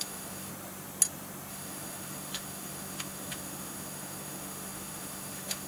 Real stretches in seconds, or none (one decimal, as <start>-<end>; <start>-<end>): 0.5-1.5